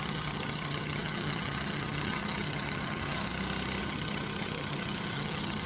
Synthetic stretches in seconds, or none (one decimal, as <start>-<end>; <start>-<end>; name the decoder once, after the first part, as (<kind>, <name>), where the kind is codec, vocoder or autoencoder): 0.0-3.3 (vocoder, HiFi-GAN); 3.8-5.7